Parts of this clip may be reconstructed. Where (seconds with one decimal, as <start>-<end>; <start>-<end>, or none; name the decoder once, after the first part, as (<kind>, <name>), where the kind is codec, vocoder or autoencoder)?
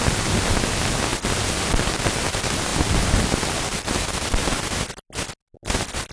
none